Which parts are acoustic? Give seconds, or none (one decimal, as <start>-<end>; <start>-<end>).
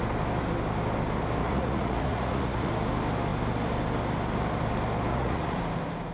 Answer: 0.0-1.4; 2.7-5.1; 5.6-6.1